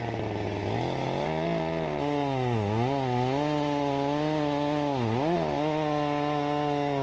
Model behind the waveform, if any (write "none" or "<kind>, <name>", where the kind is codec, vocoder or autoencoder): none